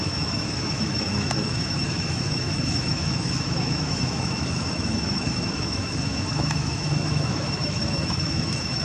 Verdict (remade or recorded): remade